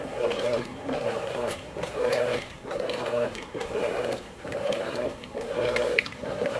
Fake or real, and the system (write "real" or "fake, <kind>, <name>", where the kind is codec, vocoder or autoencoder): fake, codec, SNAC